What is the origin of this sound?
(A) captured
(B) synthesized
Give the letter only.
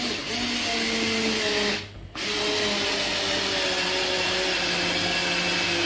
A